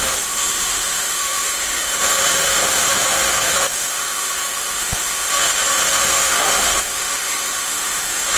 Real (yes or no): no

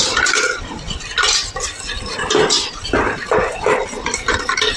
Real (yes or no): yes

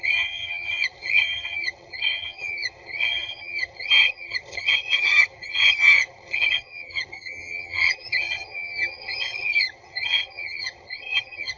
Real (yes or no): no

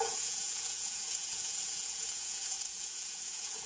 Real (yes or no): no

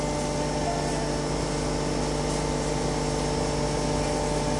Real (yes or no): yes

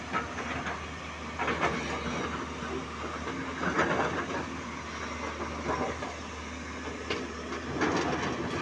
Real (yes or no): yes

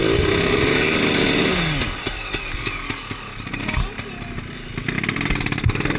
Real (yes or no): yes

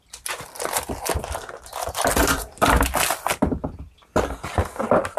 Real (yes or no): yes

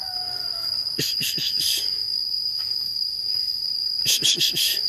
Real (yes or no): no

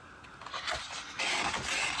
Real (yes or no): yes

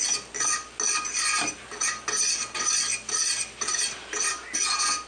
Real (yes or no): yes